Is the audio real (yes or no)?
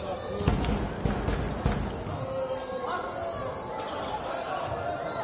yes